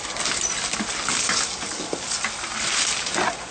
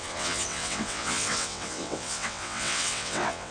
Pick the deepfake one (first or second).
second